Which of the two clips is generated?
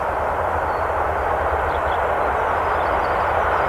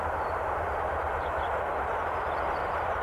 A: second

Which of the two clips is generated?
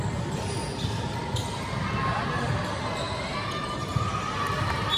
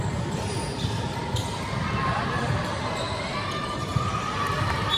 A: second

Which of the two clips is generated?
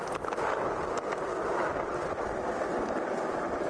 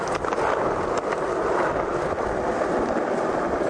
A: second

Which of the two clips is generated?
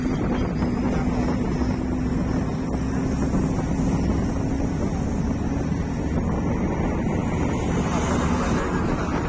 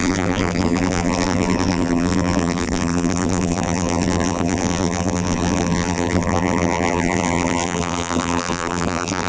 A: second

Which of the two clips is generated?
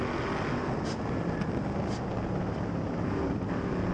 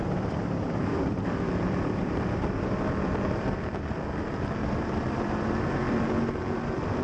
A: second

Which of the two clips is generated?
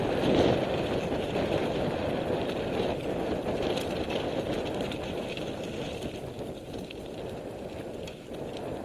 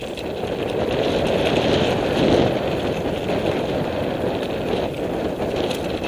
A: first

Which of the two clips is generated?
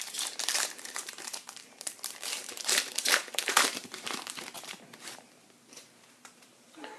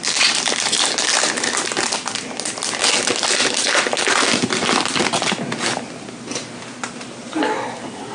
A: first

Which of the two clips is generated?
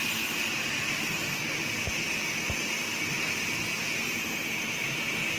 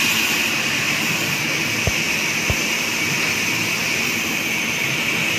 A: second